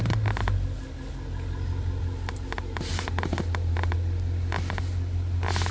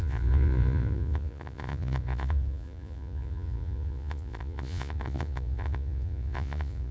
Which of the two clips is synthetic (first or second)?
second